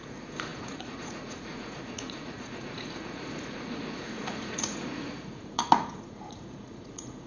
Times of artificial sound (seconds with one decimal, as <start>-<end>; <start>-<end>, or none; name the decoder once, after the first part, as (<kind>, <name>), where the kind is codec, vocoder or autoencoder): 0.0-7.3 (vocoder, Vocos)